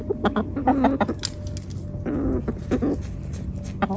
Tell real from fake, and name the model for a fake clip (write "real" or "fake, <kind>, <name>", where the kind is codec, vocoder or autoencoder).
real